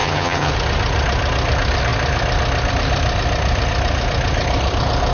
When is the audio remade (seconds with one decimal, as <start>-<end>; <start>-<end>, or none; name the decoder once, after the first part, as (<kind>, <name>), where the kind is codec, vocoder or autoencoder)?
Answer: 0.0-0.5 (vocoder, HiFi-GAN)